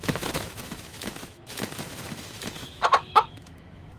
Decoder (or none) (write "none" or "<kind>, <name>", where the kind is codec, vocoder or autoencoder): autoencoder, DAC-VAE